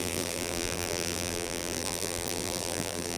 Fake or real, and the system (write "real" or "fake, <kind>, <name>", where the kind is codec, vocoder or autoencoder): fake, vocoder, BigVGAN v2